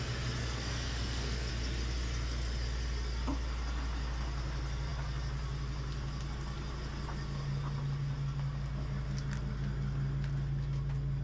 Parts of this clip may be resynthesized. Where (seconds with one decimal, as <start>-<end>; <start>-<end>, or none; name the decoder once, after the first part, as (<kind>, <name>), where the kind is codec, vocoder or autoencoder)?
0.4-1.5 (codec, SNAC)